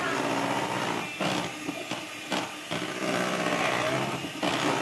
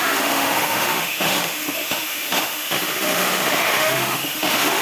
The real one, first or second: first